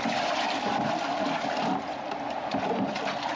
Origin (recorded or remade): recorded